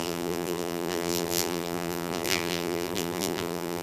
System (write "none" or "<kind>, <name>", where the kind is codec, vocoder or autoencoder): vocoder, BigVGAN v2